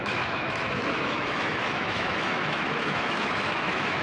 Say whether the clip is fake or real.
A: fake